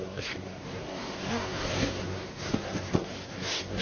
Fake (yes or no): yes